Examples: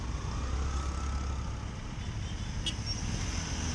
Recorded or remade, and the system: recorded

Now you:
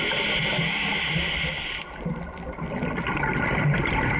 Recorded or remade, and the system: recorded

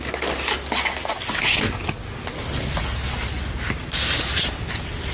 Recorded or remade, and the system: recorded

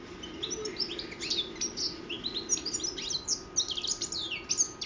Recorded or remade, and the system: recorded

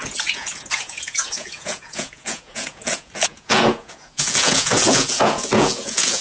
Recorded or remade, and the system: remade, vocoder, Vocos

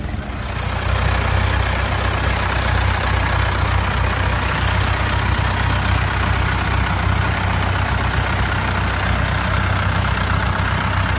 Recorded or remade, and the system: recorded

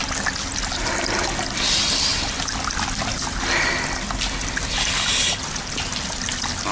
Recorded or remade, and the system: recorded